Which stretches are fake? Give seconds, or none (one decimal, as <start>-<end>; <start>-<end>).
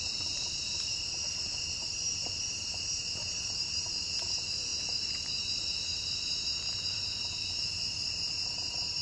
0.0-9.0